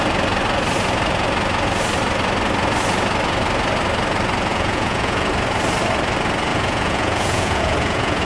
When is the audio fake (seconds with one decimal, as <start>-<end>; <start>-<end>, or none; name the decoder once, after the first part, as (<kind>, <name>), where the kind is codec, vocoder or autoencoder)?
4.5-5.3 (vocoder, Vocos); 6.5-8.2